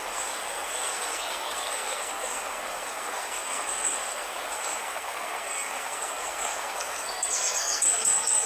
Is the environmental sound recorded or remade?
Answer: remade